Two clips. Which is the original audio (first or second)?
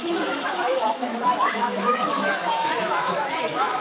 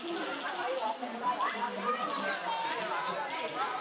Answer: second